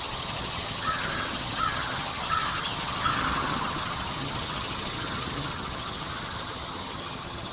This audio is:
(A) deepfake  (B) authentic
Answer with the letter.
A